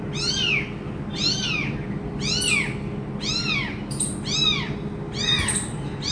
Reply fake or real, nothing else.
real